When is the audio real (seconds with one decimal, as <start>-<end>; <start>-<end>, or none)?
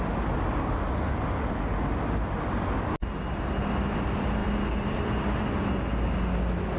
0.0-6.8